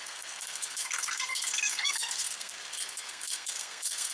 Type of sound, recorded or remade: remade